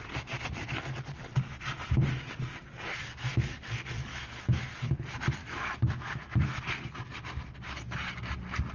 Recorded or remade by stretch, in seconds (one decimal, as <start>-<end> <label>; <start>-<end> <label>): 0.0-4.1 recorded; 4.1-4.7 remade; 4.7-5.4 recorded; 5.4-6.6 remade; 6.6-8.7 recorded

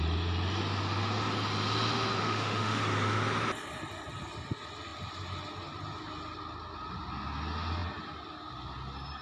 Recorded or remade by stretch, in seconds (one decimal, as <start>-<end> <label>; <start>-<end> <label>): 0.0-2.2 recorded; 2.2-2.8 remade; 2.8-9.2 recorded

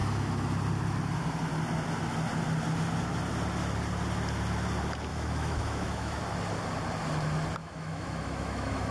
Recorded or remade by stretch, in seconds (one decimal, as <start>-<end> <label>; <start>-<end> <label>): 0.0-5.1 recorded; 5.1-6.2 remade; 6.2-7.6 recorded; 7.6-8.9 remade

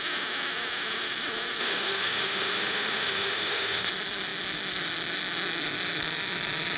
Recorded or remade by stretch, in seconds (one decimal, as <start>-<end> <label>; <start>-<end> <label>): 0.0-1.6 recorded; 1.6-3.9 remade; 3.9-6.8 recorded